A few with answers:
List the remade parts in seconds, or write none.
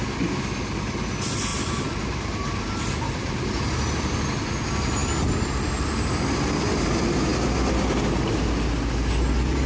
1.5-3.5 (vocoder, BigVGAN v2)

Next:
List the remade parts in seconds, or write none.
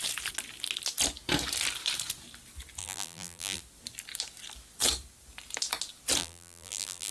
2.8-3.6 (vocoder, BigVGAN v2); 6.2-7.1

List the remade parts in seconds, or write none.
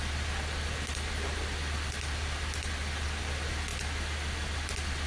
none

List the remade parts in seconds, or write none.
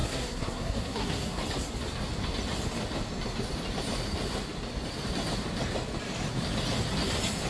0.0-1.4 (codec, SNAC)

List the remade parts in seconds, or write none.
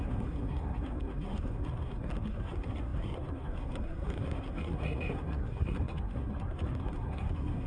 0.0-7.7 (codec, SNAC)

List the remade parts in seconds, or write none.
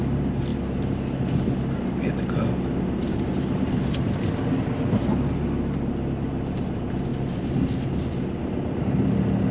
none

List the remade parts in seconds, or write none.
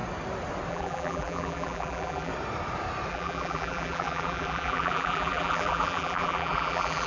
0.7-2.3 (vocoder, BigVGAN v2); 3.1-7.1